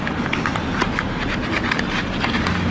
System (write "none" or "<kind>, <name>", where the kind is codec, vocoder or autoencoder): none